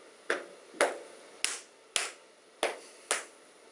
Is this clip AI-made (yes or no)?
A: no